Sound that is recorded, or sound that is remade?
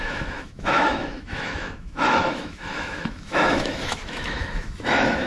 remade